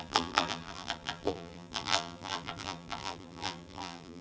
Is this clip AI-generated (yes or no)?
yes